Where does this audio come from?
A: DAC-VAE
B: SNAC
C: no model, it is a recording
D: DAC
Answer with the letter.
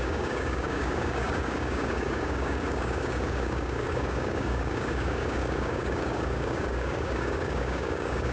D